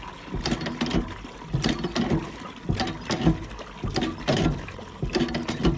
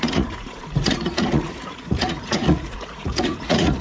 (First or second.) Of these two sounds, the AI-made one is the second